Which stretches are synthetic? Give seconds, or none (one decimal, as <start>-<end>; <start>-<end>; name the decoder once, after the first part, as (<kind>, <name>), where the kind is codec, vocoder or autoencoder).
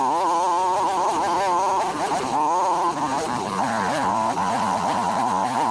3.1-5.7 (vocoder, BigVGAN v2)